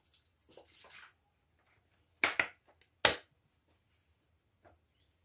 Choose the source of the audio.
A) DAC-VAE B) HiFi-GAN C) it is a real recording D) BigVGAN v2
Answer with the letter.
C